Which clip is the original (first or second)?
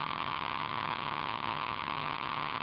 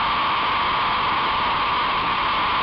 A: second